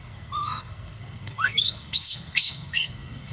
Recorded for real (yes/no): no